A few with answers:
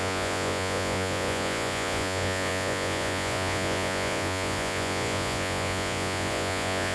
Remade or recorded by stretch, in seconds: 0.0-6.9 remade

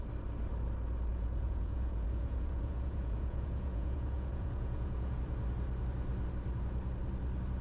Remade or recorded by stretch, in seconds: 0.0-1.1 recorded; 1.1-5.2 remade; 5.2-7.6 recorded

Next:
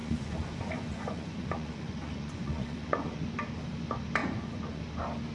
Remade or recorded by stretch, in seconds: 0.0-3.2 remade; 3.2-4.2 recorded; 4.2-4.8 remade; 4.8-5.3 recorded

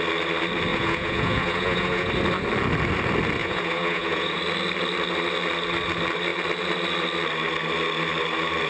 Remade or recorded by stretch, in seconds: 0.0-0.7 recorded; 0.7-2.1 remade; 2.1-3.4 recorded; 3.4-4.4 remade; 4.4-8.7 recorded

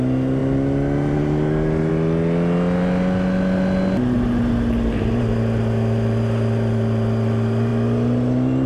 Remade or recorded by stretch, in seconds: 0.0-8.7 recorded

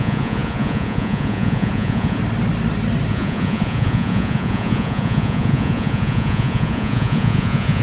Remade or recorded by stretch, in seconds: 0.0-2.2 remade; 2.2-3.1 recorded; 3.1-7.8 remade

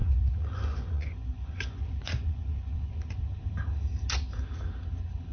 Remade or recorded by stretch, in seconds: 0.0-3.2 remade; 3.2-5.3 recorded

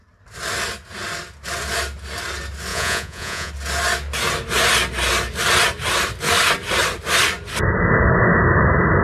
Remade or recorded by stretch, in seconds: 0.0-2.7 recorded; 2.7-3.5 remade; 3.5-9.0 recorded